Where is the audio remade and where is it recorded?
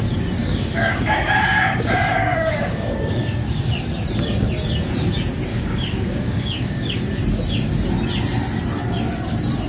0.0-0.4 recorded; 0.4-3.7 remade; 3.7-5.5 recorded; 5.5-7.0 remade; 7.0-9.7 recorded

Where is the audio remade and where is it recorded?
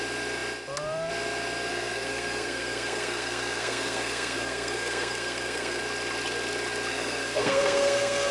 0.0-1.7 recorded; 1.7-5.8 remade; 5.8-6.9 recorded; 6.9-8.3 remade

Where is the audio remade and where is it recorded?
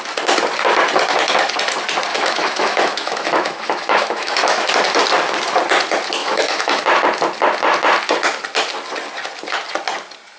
0.0-2.1 recorded; 2.1-4.7 remade; 4.7-6.2 recorded; 6.2-6.8 remade; 6.8-10.4 recorded